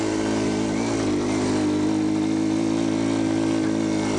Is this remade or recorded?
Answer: recorded